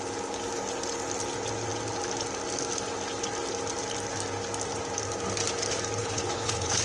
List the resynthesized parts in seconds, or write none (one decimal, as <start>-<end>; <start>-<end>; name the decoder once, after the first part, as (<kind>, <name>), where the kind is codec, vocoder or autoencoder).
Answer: 6.0-6.8 (codec, HILCodec)